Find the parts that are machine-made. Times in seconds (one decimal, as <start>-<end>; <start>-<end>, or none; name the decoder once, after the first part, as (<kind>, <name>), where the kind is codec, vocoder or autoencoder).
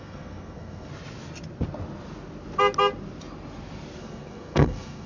0.0-0.9 (codec, SNAC); 4.0-5.1